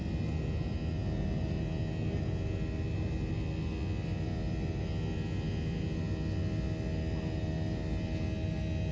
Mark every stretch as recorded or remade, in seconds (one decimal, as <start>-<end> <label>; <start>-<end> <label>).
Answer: 0.0-8.9 recorded